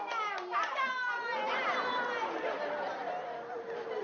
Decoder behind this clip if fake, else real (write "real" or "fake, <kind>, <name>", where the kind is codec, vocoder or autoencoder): real